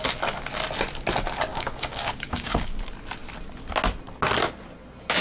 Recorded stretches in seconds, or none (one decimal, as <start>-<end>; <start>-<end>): 0.0-1.5; 2.7-5.2

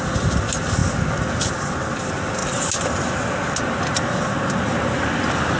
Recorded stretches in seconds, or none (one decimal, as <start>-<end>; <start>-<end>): 0.0-5.6

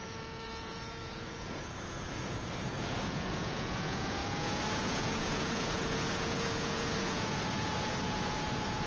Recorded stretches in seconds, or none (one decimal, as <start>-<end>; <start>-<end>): none

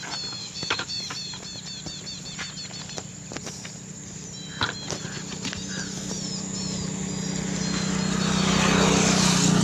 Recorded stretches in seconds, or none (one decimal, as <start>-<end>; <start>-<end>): 0.0-0.4; 1.0-9.6

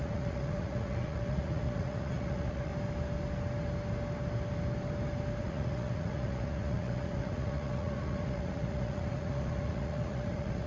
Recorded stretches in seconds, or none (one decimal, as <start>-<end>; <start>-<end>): 2.7-5.4

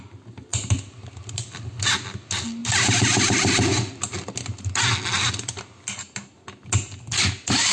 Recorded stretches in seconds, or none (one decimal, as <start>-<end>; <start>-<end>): 0.0-7.7

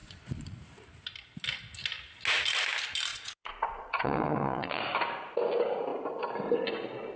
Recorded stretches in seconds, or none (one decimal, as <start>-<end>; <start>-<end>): 0.6-3.1; 4.8-7.2

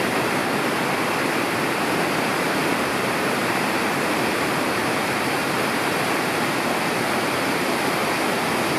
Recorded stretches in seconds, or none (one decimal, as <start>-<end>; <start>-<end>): 0.4-1.7; 5.4-7.1; 8.0-8.8